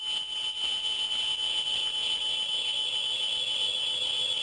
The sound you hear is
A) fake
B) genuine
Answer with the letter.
B